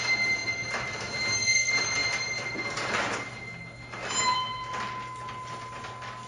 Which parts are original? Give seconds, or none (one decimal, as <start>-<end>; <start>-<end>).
0.0-0.4; 1.2-6.3